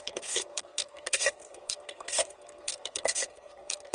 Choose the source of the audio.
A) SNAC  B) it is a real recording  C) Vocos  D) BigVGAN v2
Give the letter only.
A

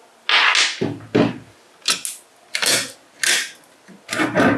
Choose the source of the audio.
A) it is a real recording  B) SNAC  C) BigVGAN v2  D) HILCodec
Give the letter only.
A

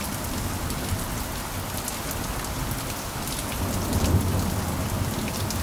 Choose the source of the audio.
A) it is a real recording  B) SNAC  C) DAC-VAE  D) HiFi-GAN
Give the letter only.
A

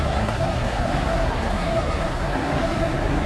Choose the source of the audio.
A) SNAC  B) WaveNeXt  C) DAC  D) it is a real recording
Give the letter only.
A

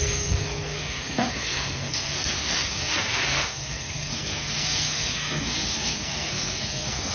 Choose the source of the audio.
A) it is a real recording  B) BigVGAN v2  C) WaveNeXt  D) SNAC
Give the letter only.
D